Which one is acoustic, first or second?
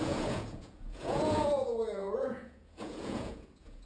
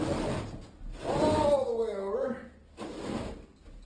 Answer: second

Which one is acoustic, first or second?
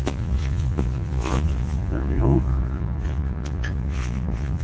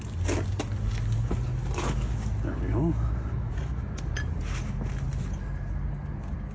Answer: second